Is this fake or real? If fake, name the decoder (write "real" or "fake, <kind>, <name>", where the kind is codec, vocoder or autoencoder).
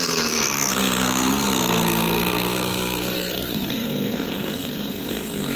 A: fake, codec, SNAC